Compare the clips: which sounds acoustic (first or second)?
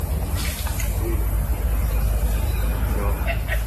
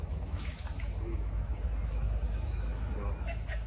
first